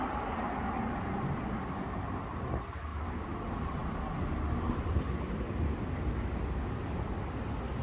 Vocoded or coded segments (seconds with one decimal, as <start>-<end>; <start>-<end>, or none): none